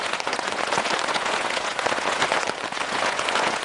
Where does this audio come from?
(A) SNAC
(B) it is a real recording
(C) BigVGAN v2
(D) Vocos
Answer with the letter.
D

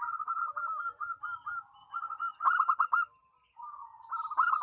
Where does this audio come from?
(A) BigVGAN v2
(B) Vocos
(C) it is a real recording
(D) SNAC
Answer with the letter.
C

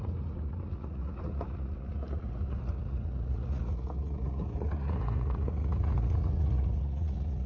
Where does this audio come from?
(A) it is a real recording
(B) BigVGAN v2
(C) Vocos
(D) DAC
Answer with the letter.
C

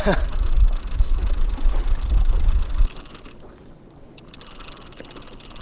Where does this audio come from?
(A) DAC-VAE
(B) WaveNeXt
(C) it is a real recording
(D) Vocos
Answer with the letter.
C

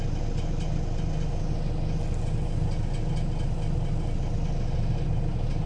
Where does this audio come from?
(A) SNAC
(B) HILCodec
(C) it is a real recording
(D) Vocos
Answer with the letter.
C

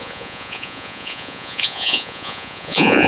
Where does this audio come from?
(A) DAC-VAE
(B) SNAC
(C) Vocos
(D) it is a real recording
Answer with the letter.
C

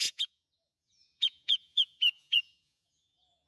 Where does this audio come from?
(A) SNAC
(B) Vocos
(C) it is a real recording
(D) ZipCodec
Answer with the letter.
B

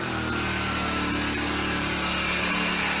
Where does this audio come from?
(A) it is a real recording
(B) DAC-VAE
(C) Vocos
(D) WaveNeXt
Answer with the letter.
A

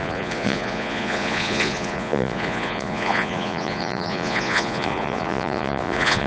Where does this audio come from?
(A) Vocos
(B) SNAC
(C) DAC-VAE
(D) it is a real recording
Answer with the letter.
A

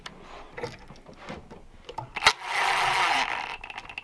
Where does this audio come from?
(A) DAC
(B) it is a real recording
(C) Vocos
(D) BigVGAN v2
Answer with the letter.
B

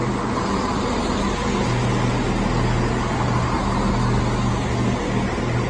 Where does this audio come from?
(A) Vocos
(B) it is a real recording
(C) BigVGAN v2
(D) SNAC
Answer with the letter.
B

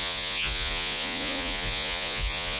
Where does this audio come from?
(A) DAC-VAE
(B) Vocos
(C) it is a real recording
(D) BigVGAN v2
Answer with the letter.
B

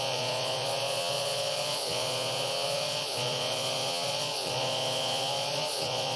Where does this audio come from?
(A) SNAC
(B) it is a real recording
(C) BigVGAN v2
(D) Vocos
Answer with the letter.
D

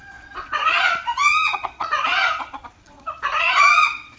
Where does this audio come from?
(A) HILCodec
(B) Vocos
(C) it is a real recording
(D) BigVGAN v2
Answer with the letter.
B